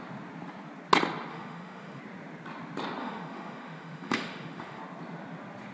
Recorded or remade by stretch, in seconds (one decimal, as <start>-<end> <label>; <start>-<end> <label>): 0.0-1.3 recorded; 1.3-2.0 remade; 2.0-3.0 recorded; 3.0-4.8 remade; 4.8-5.7 recorded

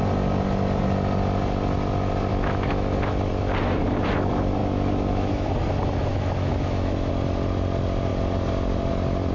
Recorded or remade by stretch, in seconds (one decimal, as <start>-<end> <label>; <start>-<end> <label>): 0.0-2.3 recorded; 2.3-3.3 remade; 3.3-4.6 recorded; 4.6-5.5 remade; 5.5-6.1 recorded; 6.1-7.1 remade; 7.1-9.3 recorded